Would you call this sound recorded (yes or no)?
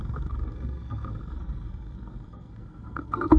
no